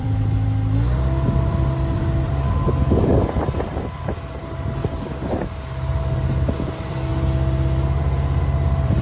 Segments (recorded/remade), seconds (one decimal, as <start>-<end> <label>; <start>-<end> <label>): 0.0-4.8 remade; 4.8-6.0 recorded; 6.0-7.1 remade; 7.1-8.0 recorded; 8.0-9.0 remade